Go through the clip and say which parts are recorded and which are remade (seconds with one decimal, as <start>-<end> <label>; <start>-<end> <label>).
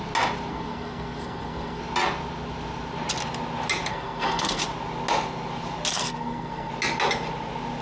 0.0-0.5 recorded; 0.5-1.8 remade; 1.8-3.9 recorded; 3.9-4.6 remade; 4.6-5.9 recorded; 5.9-6.7 remade; 6.7-7.8 recorded